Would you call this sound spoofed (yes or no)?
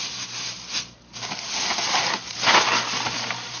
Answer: no